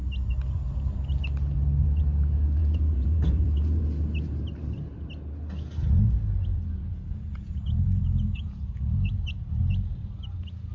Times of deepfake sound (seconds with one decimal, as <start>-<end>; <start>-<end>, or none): 2.6-3.8; 6.5-9.6

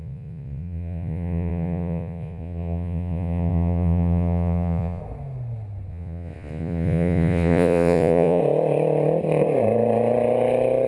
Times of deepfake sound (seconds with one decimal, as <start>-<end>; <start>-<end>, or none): 0.0-5.0; 5.9-8.4

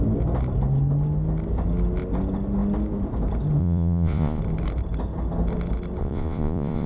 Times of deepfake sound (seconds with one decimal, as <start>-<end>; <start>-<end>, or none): 3.6-4.4; 6.0-6.9